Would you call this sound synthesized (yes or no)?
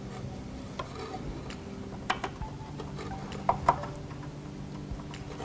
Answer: no